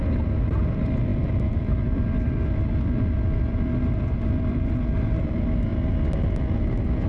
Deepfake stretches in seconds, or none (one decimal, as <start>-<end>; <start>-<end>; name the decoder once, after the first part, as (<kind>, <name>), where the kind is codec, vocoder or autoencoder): 0.0-5.7 (vocoder, BigVGAN v2)